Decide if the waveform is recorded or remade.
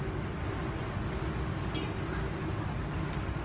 recorded